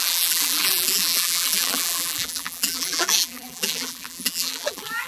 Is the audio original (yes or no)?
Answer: no